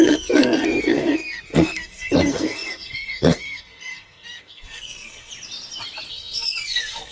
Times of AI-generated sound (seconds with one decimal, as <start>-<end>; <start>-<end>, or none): 0.0-5.3; 6.1-7.1